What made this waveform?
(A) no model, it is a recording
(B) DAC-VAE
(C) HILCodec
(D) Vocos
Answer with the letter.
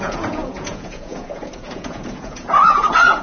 D